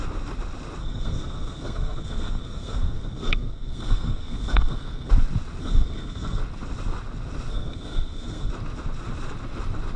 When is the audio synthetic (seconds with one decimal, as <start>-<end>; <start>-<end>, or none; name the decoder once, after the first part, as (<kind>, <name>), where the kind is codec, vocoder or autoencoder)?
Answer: 0.8-5.1 (codec, SNAC); 5.6-6.4; 7.5-8.5

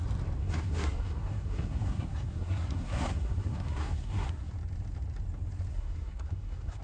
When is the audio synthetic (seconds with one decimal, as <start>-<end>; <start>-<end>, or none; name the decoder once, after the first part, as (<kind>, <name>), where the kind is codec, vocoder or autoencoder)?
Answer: 0.4-4.5 (codec, SNAC); 5.7-6.8

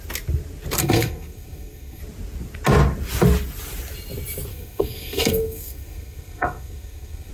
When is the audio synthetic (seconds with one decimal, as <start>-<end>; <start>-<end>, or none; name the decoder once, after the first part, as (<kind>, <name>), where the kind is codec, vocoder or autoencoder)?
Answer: 0.8-2.0 (codec, SNAC); 4.5-7.3

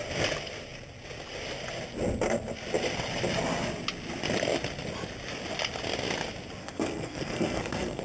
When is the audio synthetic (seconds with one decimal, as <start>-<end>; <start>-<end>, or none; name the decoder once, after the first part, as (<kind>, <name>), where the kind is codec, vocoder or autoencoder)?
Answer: 6.6-8.0 (codec, SNAC)

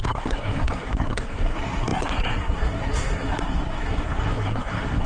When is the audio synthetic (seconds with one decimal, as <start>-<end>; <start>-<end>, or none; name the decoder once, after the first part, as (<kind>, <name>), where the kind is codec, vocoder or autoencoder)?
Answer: 0.0-5.1 (codec, SNAC)

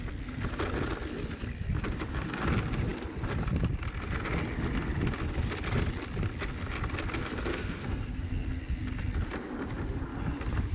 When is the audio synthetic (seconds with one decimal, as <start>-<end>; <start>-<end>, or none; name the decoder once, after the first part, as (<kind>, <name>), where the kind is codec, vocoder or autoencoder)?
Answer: 7.5-8.3 (codec, SNAC)

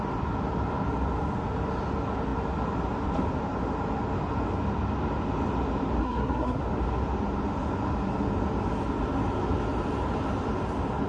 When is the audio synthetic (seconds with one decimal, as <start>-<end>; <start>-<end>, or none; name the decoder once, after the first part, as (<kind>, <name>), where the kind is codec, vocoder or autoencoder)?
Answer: 6.0-6.6 (codec, SNAC)

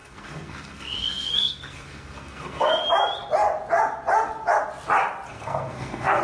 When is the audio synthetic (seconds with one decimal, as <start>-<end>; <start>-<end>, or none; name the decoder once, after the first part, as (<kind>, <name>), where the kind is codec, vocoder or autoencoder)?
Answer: 0.0-2.8 (codec, SNAC); 5.3-6.2